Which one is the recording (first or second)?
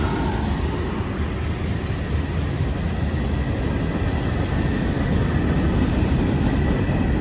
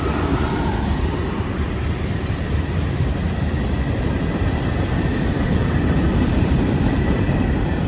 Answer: first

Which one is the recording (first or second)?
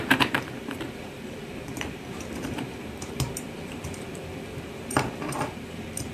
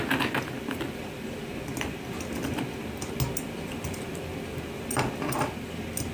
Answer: second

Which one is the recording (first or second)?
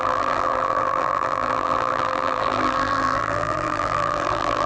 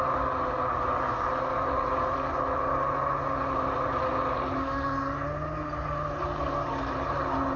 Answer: second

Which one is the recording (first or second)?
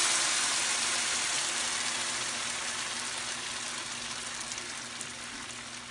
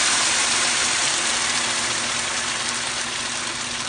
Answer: first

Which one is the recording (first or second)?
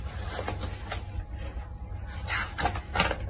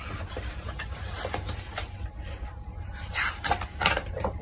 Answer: first